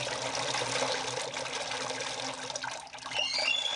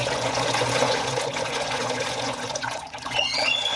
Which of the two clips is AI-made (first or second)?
second